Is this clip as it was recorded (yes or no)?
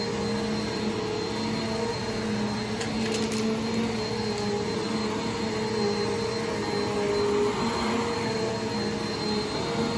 yes